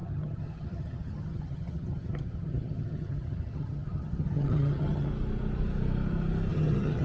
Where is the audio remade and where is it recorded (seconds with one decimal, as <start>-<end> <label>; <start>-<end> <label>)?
0.0-5.1 remade; 5.1-6.5 recorded; 6.5-7.0 remade